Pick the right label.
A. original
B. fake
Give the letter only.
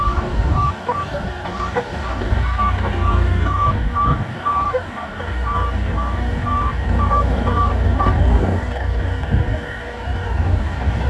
B